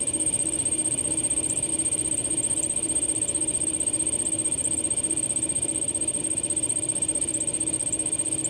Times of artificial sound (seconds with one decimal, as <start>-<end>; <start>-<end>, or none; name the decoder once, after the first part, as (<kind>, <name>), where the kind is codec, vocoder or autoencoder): none